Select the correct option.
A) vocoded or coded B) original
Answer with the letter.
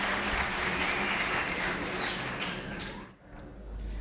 B